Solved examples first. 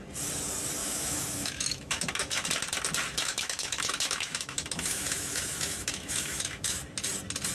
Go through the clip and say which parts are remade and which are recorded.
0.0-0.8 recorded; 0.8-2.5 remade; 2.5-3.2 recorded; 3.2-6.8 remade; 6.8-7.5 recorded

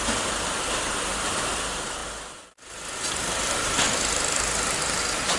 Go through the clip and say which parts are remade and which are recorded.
0.0-5.4 recorded

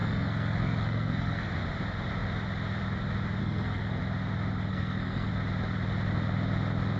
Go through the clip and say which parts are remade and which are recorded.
0.0-1.5 remade; 1.5-3.4 recorded; 3.4-4.0 remade; 4.0-4.7 recorded; 4.7-5.3 remade; 5.3-7.0 recorded

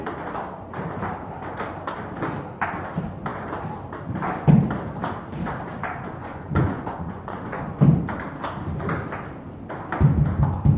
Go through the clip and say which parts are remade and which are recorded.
0.0-6.2 recorded; 6.2-7.8 remade; 7.8-10.8 recorded

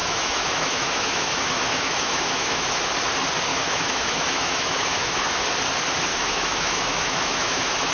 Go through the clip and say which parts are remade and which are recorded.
0.0-2.7 remade; 2.7-3.5 recorded; 3.5-5.4 remade; 5.4-6.1 recorded; 6.1-7.9 remade

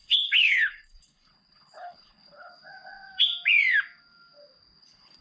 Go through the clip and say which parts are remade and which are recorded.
0.0-2.5 remade; 2.5-4.8 recorded; 4.8-5.2 remade

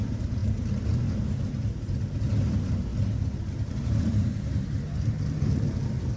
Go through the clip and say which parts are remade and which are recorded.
0.0-2.9 remade; 2.9-3.7 recorded; 3.7-6.2 remade